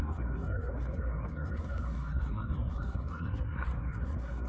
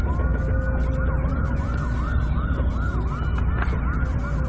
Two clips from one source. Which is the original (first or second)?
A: second